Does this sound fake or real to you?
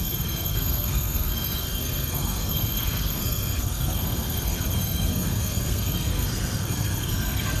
fake